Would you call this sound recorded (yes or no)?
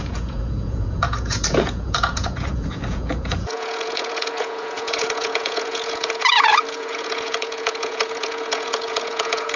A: no